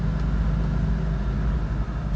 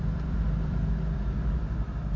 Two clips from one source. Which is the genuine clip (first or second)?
first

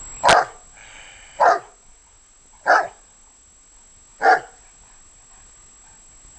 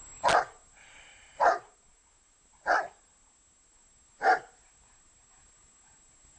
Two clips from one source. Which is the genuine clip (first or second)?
first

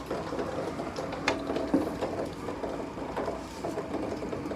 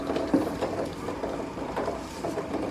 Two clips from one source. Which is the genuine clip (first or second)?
first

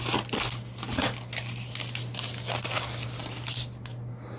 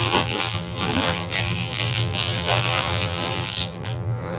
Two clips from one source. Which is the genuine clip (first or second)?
first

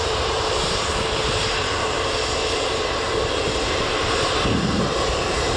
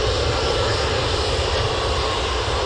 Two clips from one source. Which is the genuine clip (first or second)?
second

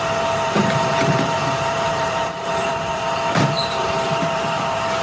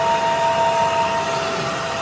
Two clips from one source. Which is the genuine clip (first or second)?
second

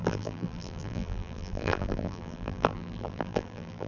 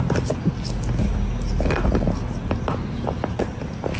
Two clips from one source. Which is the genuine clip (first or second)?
second